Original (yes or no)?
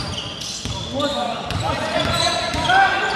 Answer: yes